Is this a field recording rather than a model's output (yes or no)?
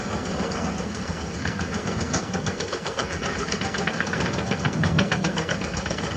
no